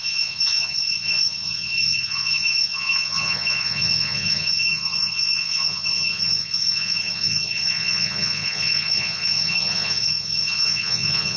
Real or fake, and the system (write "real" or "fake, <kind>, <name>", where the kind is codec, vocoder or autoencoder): fake, vocoder, Vocos